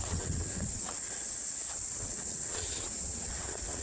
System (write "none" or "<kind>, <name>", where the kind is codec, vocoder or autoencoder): vocoder, WaveNeXt